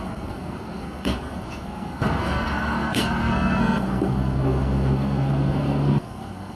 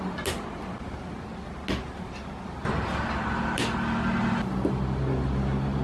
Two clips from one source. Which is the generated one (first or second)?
first